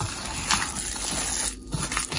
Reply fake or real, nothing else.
real